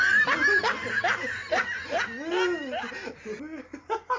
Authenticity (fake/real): real